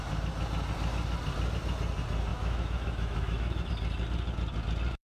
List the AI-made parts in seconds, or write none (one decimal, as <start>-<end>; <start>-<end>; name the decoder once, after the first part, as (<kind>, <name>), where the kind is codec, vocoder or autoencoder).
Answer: 2.3-3.7 (autoencoder, DAC-VAE)